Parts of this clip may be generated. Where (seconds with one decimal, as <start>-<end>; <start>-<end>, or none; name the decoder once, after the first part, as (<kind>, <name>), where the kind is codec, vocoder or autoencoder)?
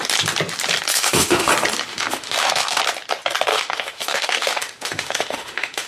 0.9-1.5 (autoencoder, DAC-VAE); 1.9-2.8; 3.5-5.9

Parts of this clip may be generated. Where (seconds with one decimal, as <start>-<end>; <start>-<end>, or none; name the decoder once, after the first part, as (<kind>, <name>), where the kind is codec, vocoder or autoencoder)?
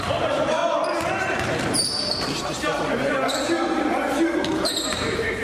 0.0-0.6 (vocoder, BigVGAN v2); 2.6-5.4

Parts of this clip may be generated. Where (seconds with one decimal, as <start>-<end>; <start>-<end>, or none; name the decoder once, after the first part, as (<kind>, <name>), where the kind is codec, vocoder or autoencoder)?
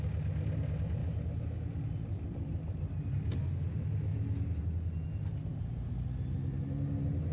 none